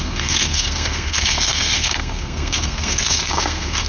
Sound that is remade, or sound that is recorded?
remade